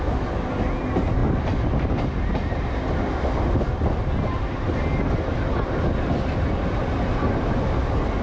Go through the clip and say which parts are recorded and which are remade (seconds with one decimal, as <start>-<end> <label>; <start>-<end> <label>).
0.0-8.2 recorded

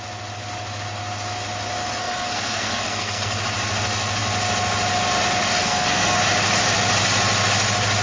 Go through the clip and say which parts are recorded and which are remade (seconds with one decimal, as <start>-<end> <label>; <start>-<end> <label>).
0.0-2.0 recorded; 2.0-3.4 remade; 3.4-5.6 recorded; 5.6-6.2 remade; 6.2-8.0 recorded